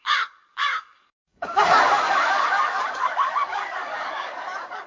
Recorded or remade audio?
remade